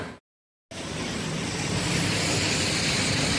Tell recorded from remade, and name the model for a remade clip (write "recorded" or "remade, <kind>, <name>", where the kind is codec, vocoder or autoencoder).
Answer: recorded